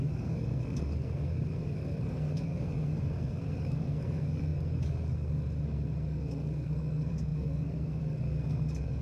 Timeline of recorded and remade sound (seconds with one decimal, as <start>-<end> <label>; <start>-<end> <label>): 0.0-9.0 remade